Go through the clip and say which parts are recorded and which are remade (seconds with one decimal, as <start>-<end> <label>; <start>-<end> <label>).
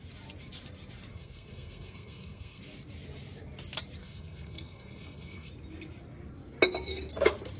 0.0-1.1 recorded; 1.1-2.6 remade; 2.6-4.0 recorded; 4.0-5.5 remade; 5.5-7.6 recorded